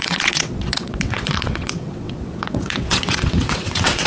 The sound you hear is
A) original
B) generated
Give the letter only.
B